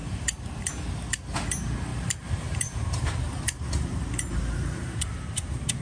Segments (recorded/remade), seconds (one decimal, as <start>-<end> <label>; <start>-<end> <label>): 0.0-0.7 remade; 0.7-1.9 recorded; 1.9-5.8 remade